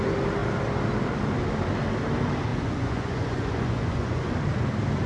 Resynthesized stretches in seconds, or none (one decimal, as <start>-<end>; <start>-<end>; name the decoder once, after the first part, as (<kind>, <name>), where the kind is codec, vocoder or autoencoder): 2.5-4.3 (vocoder, Vocos)